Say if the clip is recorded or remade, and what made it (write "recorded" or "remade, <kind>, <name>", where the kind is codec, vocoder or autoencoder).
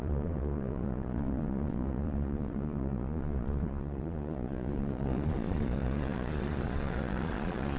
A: remade, vocoder, Vocos